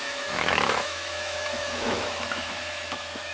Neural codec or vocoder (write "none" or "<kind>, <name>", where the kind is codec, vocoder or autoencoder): autoencoder, DAC-VAE